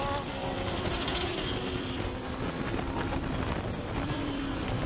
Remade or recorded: remade